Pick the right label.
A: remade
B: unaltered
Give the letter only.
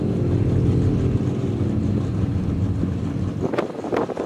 B